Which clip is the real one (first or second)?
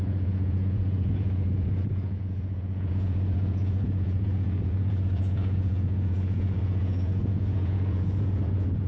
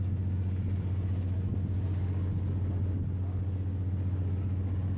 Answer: second